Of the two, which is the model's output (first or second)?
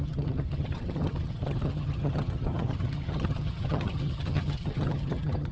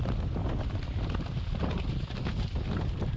first